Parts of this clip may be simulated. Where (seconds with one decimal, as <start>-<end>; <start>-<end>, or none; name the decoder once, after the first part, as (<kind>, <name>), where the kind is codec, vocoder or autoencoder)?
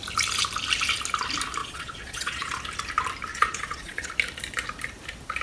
1.6-2.6 (vocoder, Vocos); 3.3-4.1